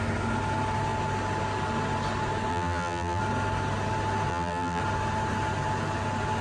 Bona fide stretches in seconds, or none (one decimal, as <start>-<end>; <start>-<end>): 0.0-2.5; 3.2-4.3; 4.8-6.4